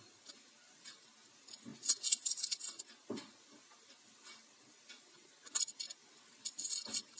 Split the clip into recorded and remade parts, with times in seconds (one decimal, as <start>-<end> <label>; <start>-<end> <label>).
0.0-7.2 recorded